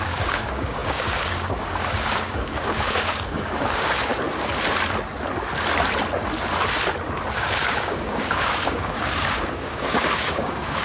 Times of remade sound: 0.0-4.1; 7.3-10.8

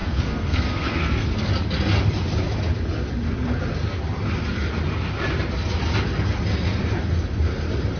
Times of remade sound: 0.0-1.5

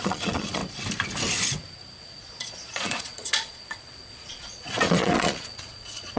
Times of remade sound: 0.0-0.6; 2.0-6.2

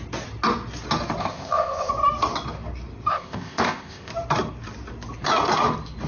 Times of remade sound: 1.2-1.9; 3.1-4.1

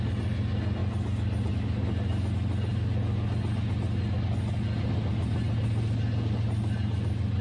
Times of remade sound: none

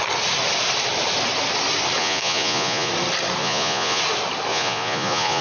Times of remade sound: 2.0-2.9; 3.4-4.0; 4.5-5.4